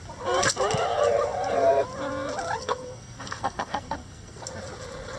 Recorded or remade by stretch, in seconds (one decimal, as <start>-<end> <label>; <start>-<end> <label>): 0.0-2.6 recorded; 2.6-4.4 remade; 4.4-5.2 recorded